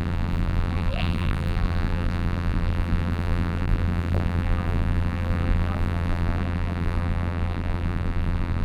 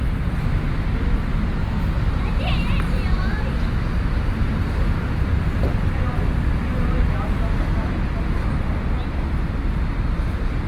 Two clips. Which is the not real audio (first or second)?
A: first